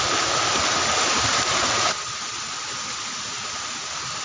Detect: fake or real real